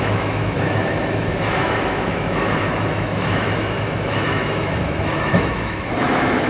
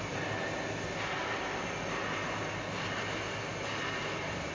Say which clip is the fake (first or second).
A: first